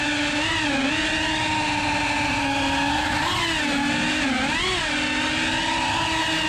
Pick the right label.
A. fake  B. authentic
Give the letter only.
B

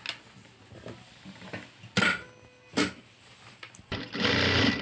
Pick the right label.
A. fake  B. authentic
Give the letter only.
B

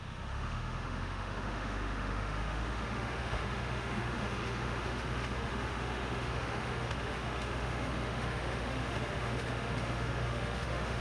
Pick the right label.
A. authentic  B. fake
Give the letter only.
B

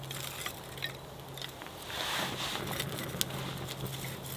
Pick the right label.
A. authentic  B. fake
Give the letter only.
A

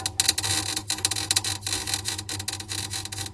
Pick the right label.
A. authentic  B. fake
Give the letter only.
A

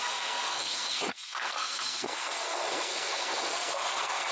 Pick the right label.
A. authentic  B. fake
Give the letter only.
B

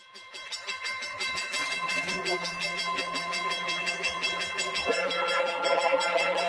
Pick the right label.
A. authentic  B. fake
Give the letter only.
B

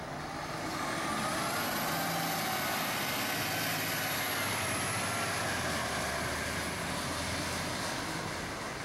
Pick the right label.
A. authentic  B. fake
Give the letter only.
A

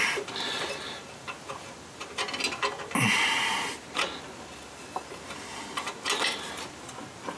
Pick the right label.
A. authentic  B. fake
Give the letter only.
A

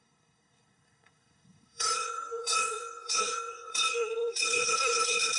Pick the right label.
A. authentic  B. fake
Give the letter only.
B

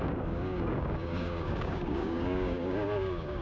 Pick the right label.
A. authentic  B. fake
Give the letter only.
B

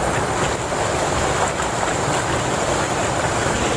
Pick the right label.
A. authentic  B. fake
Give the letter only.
A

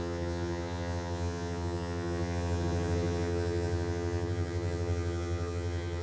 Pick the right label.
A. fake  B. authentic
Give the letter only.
A